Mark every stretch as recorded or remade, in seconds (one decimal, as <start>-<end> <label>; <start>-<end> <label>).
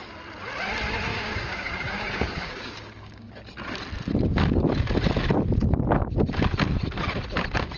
0.0-1.1 recorded; 1.1-3.3 remade; 3.3-7.8 recorded